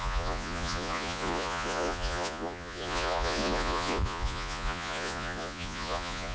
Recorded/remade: remade